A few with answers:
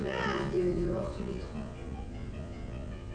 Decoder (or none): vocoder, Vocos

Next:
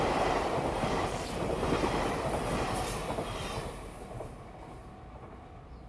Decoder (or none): none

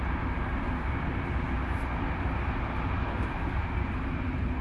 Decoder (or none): none